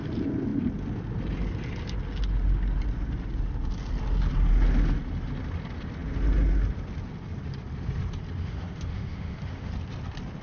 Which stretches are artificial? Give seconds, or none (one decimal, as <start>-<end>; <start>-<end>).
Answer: 8.4-9.7